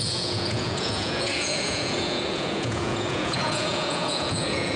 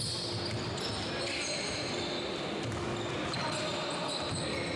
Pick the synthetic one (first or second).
first